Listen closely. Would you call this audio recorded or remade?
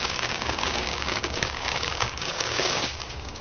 remade